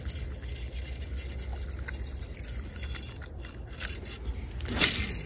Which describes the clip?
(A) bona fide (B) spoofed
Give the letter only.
A